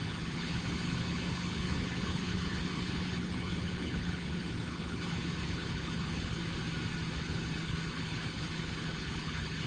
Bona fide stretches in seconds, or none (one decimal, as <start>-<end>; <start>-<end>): 6.4-7.2